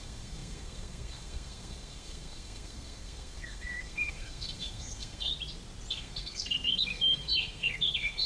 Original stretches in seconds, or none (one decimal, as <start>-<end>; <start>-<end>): 5.3-5.9